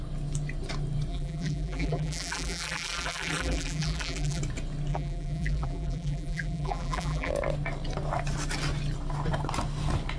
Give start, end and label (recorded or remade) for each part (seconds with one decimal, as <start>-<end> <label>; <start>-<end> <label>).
0.0-1.1 recorded; 1.1-4.4 remade; 4.4-4.9 recorded; 4.9-7.3 remade; 7.3-10.2 recorded

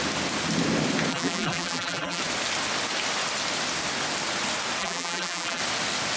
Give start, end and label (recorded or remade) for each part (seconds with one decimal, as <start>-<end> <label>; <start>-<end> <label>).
0.0-1.1 recorded; 1.1-2.2 remade; 2.2-4.8 recorded; 4.8-5.6 remade; 5.6-6.2 recorded

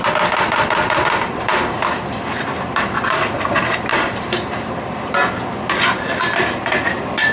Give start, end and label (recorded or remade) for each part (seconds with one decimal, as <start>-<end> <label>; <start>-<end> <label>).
0.0-1.5 recorded; 1.5-2.7 remade; 2.7-3.9 recorded; 3.9-4.8 remade; 4.8-7.3 recorded